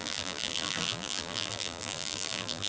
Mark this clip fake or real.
fake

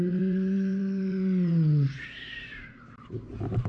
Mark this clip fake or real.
fake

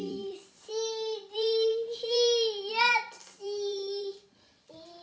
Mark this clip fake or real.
fake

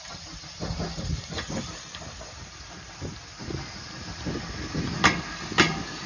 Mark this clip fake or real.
real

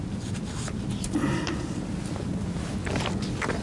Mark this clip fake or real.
real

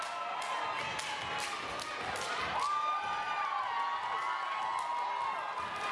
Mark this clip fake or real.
real